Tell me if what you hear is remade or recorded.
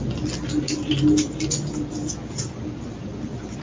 recorded